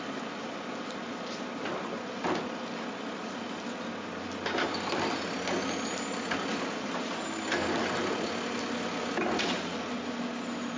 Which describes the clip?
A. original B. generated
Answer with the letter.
A